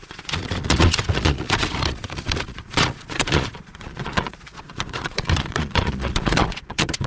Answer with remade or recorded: remade